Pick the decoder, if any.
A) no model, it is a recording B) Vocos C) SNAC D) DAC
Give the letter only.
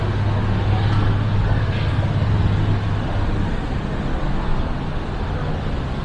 A